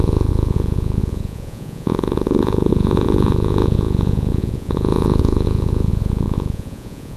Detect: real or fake fake